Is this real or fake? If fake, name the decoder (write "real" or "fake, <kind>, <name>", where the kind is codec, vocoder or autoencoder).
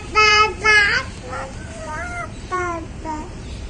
fake, vocoder, BigVGAN v2